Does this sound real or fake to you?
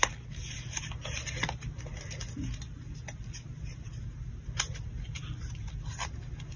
real